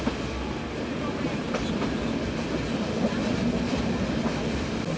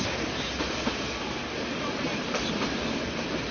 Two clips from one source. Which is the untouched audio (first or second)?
first